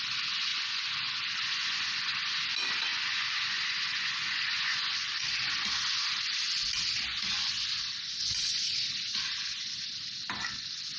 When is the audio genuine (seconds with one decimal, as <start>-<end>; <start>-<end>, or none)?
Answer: 0.0-0.5; 2.4-2.9; 5.7-7.1; 9.9-11.0